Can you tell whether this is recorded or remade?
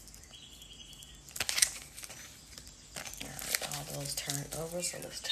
recorded